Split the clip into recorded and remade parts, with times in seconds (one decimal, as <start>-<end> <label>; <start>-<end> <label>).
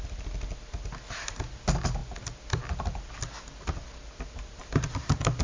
0.0-5.4 recorded